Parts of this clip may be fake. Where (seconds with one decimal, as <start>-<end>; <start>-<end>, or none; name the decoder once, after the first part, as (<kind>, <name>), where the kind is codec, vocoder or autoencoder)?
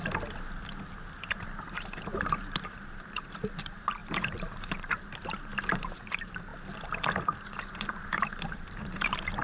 1.6-6.5 (vocoder, BigVGAN v2); 7.6-9.4